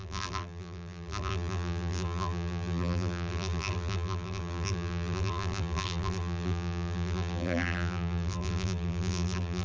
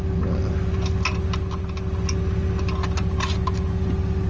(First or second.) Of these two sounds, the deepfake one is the first